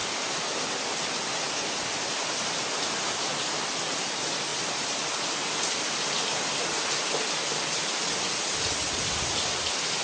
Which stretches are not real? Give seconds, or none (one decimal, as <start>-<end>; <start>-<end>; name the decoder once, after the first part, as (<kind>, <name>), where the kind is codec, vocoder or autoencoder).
none